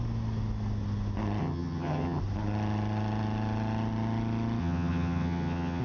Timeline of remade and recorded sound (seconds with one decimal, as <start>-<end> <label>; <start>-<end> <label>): 0.0-1.4 recorded; 1.4-2.2 remade; 2.2-4.6 recorded; 4.6-5.8 remade